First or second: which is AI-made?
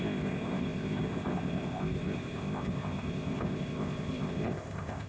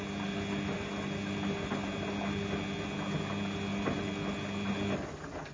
first